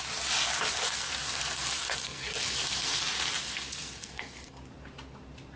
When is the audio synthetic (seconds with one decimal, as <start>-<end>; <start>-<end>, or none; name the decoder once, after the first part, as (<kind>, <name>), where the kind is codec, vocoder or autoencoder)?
0.7-3.0 (codec, SNAC); 3.4-4.6